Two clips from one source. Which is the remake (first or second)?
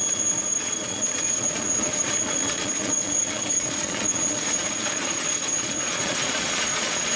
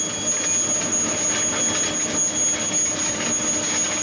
first